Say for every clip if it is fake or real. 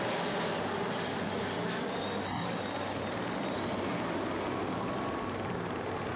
real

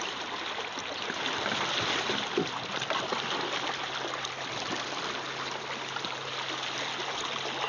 real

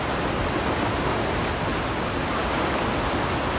real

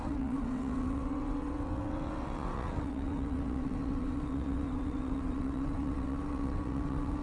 fake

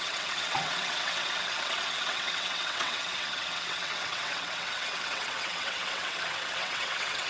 fake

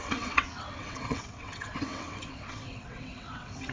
fake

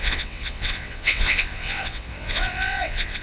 fake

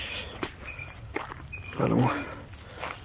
real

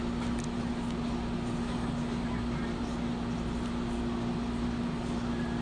real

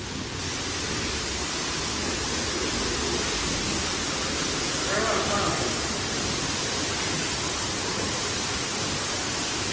real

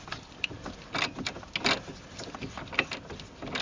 real